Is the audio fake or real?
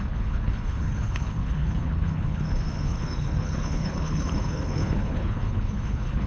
fake